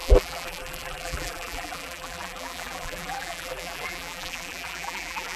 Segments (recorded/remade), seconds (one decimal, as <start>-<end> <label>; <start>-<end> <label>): 0.0-5.4 remade